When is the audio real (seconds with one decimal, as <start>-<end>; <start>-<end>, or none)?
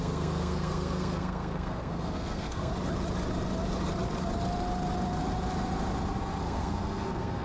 2.7-6.4